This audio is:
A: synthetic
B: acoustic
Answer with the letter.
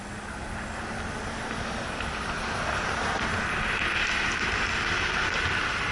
B